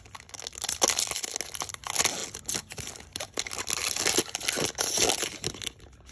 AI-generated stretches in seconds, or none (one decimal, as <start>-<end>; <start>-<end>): none

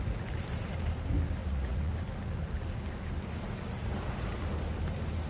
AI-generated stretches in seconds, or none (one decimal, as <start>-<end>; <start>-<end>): 1.4-1.9

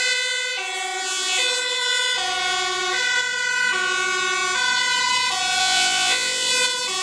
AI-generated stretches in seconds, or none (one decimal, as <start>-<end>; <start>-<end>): 5.6-6.5

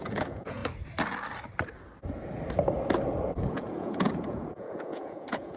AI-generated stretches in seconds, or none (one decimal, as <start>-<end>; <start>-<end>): 0.0-0.6; 3.5-5.6

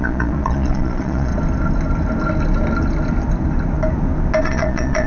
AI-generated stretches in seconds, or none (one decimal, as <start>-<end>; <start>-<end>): 0.0-1.3; 4.4-5.1

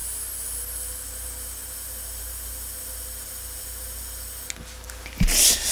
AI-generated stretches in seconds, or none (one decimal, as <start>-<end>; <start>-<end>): none